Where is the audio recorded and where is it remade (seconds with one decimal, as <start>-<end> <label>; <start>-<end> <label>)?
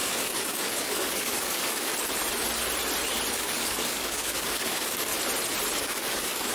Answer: 0.0-1.9 remade; 1.9-3.3 recorded; 3.3-5.1 remade; 5.1-5.8 recorded; 5.8-6.5 remade